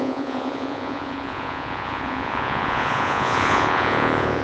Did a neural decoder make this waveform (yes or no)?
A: yes